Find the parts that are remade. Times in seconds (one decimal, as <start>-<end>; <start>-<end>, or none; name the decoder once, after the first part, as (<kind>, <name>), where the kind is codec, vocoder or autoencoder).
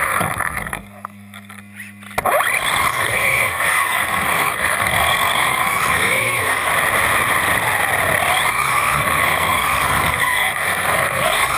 0.0-1.6 (codec, SNAC); 2.9-6.7; 8.5-11.6